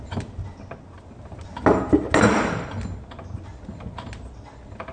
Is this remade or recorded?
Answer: recorded